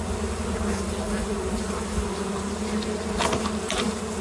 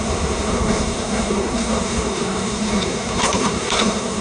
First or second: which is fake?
second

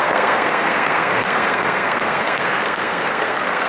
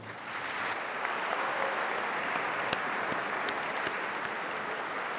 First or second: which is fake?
first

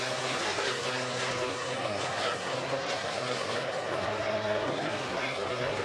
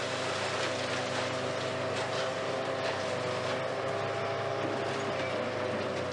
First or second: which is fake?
first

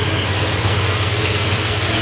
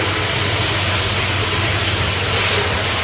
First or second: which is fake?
first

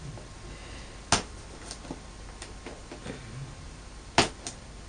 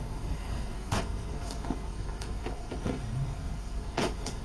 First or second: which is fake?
second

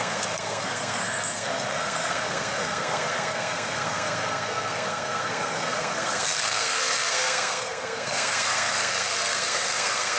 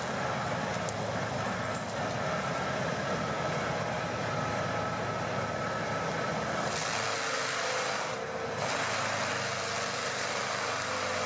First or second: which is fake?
first